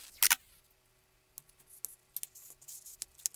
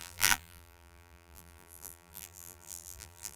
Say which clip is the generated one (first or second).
second